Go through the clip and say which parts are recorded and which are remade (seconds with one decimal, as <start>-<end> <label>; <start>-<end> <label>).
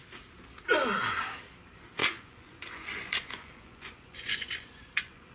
0.0-2.0 recorded; 2.0-5.3 remade